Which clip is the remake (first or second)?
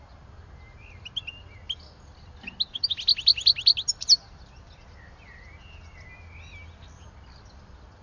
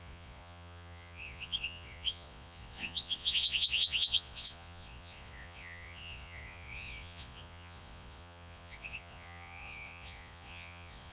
second